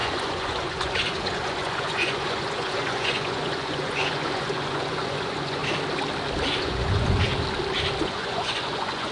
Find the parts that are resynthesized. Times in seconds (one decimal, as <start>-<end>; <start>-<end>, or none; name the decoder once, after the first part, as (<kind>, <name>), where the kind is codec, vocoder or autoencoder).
0.0-5.6 (vocoder, Vocos); 6.5-7.3; 8.0-9.1